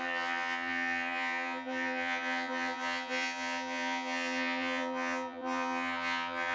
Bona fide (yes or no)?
no